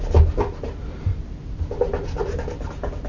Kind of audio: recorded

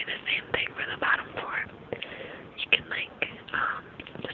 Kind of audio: recorded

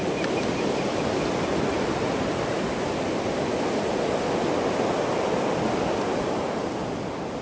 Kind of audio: recorded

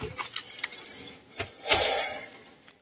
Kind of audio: recorded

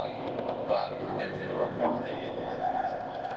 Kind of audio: remade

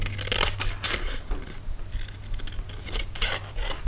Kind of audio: recorded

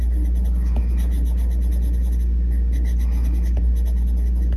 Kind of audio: recorded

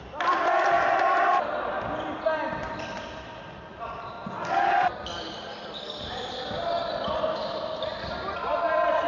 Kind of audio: recorded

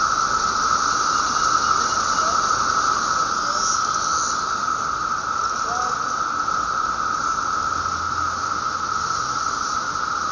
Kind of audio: recorded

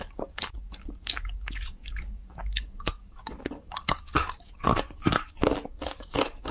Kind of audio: remade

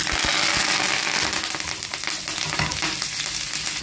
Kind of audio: recorded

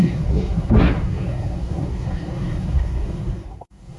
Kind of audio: remade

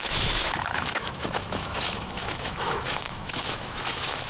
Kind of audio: remade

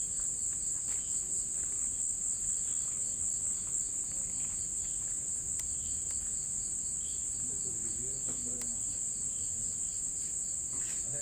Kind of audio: recorded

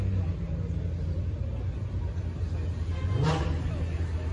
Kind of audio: recorded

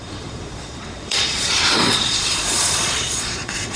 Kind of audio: remade